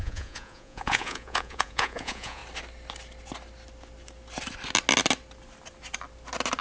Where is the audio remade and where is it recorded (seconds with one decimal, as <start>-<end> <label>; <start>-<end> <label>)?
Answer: 0.0-2.4 remade; 2.4-6.6 recorded